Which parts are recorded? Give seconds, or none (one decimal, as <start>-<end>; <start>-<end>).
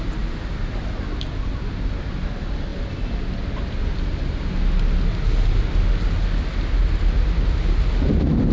0.0-8.5